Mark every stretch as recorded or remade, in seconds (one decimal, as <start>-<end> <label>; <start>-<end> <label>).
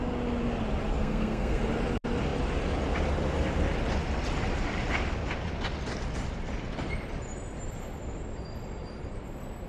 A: 0.0-1.0 recorded; 1.0-1.6 remade; 1.6-9.7 recorded